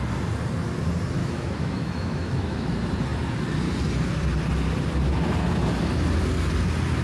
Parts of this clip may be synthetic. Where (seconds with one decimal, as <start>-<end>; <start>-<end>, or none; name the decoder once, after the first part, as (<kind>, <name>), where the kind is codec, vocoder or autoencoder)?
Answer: 1.2-2.7 (autoencoder, DAC-VAE)

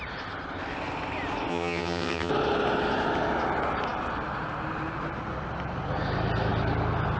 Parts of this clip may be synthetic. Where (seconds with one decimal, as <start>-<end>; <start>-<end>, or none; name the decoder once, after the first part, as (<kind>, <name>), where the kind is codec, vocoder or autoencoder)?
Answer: 1.5-2.3 (vocoder, HiFi-GAN)

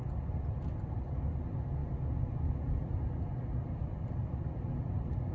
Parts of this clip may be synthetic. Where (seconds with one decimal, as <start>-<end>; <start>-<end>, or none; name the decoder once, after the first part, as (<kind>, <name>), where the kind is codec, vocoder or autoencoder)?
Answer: none

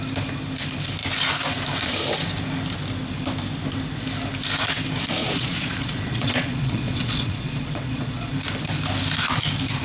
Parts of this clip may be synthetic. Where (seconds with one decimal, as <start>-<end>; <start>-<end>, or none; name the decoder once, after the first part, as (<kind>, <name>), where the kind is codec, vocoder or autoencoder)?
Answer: 5.2-8.3 (vocoder, Vocos)

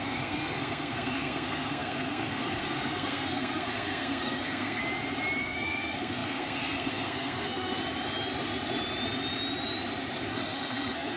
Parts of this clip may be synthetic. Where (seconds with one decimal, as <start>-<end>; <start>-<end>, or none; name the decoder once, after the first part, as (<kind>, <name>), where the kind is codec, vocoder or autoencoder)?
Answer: 0.0-4.8 (codec, SNAC); 5.4-7.8; 10.3-11.2

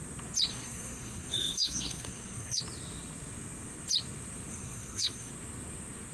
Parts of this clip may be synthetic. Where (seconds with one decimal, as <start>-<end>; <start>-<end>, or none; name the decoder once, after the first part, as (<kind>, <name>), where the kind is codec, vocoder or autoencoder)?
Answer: 0.5-2.6 (codec, SNAC); 4.5-5.3

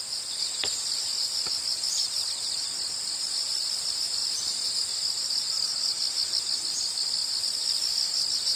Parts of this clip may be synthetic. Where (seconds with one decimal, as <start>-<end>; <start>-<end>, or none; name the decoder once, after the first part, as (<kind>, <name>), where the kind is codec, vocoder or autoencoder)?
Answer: none

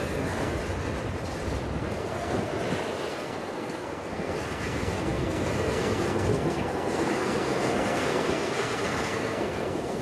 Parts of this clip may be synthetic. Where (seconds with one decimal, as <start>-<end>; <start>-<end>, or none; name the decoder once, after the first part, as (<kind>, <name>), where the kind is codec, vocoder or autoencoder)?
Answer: 0.0-0.6 (codec, SNAC); 1.8-2.5; 3.1-10.0